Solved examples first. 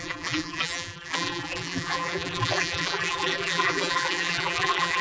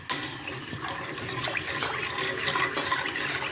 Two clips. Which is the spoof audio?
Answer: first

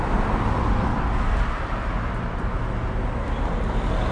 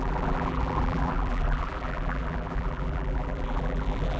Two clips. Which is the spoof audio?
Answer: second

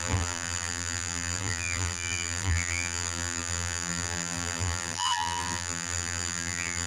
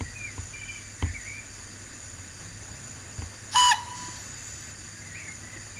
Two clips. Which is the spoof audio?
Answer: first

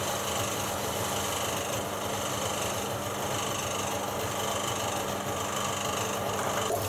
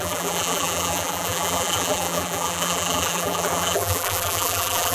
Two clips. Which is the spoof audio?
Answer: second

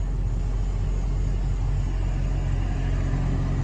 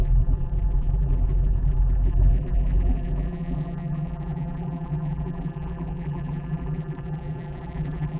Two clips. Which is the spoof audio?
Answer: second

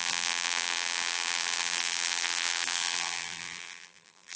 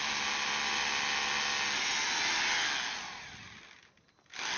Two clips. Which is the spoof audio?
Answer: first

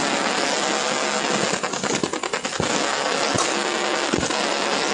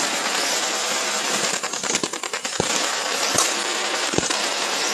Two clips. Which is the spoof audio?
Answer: second